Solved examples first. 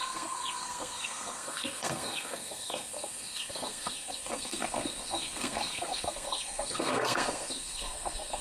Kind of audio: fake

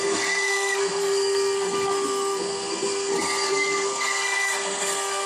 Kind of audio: fake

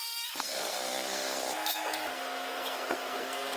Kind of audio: fake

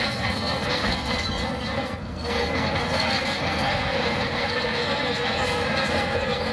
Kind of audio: fake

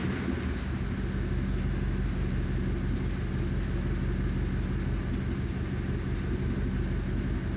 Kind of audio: real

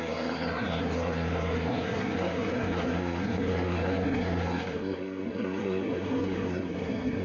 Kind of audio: fake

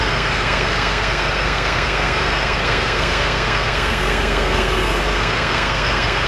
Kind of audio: fake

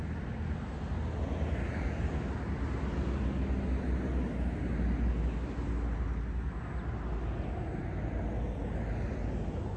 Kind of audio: real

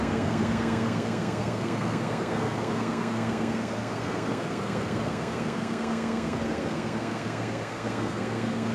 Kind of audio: fake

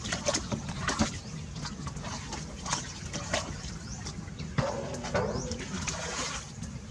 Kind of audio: real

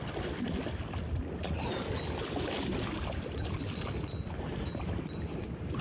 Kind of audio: real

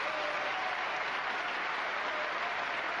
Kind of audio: real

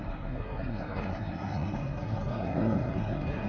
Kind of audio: fake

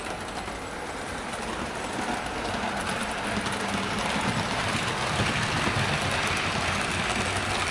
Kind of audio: real